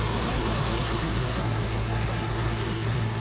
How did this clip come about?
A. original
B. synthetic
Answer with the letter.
B